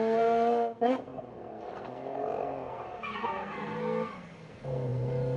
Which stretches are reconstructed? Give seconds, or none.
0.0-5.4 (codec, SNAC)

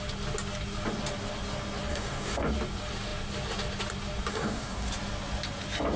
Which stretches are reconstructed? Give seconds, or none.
1.9-2.5 (codec, DAC); 4.3-4.9

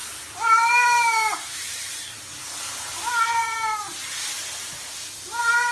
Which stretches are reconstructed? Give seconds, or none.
0.0-3.1 (vocoder, BigVGAN v2)

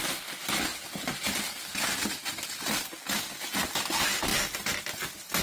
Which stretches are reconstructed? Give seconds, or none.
none

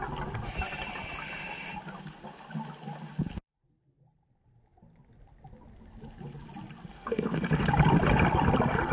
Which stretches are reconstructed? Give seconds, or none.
6.9-7.5 (codec, SNAC)

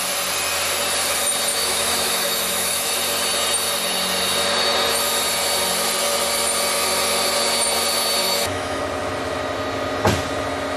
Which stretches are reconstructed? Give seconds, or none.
1.5-2.9 (autoencoder, DAC-VAE); 8.2-8.8